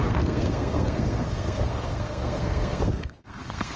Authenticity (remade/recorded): remade